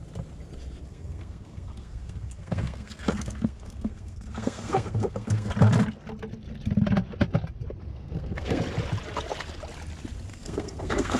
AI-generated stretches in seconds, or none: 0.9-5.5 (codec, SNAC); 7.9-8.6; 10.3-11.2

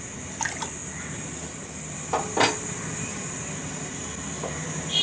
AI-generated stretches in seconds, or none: none

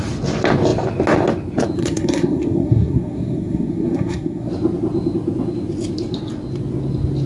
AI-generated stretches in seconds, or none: 1.8-4.5 (codec, SNAC)

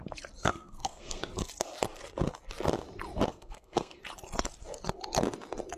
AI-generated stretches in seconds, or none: 0.4-1.2 (codec, SNAC); 3.3-4.0

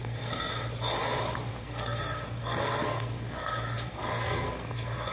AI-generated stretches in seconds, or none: 0.0-0.5 (codec, SNAC); 1.6-5.1

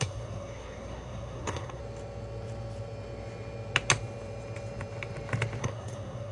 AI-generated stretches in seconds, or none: 0.0-1.8 (codec, SNAC); 5.6-6.3

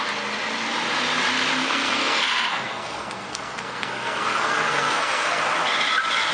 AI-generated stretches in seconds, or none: 1.6-5.4 (codec, SNAC)